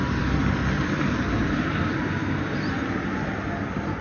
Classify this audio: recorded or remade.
remade